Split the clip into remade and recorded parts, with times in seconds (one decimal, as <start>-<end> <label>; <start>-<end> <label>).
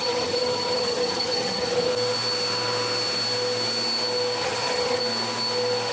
0.0-1.9 remade; 1.9-4.4 recorded; 4.4-5.0 remade; 5.0-5.9 recorded